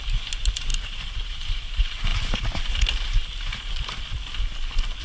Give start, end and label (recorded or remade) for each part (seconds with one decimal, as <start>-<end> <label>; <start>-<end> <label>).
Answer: 0.0-5.0 recorded